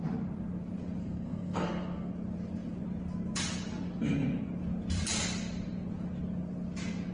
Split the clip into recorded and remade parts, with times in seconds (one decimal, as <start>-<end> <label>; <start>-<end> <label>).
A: 0.0-1.0 recorded; 1.0-2.1 remade; 2.1-7.1 recorded